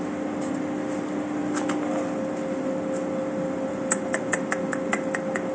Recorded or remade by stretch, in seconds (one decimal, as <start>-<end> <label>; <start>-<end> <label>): 0.0-5.5 recorded